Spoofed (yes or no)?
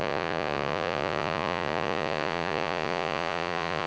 yes